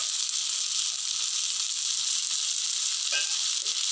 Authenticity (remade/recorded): recorded